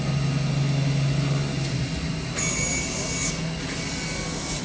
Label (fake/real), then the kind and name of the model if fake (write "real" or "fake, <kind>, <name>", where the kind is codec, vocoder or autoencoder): real